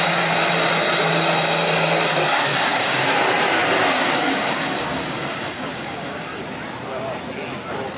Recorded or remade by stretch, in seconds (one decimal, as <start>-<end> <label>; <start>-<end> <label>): 0.0-2.5 recorded; 2.5-3.1 remade; 3.1-4.0 recorded; 4.0-6.4 remade; 6.4-8.0 recorded